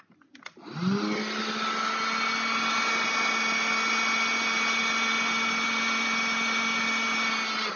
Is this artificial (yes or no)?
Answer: no